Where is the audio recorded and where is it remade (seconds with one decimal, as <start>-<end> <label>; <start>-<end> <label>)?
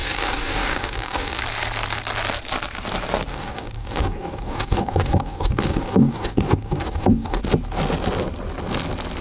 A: 0.0-1.4 remade; 1.4-3.3 recorded; 3.3-7.4 remade; 7.4-9.2 recorded